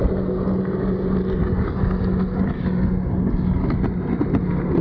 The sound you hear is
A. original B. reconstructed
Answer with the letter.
A